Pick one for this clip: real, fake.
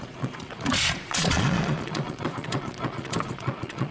fake